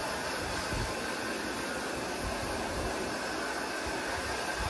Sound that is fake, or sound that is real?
real